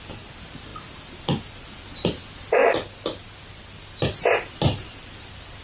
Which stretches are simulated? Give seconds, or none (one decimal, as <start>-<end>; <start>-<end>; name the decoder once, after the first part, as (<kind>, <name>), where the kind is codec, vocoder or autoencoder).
none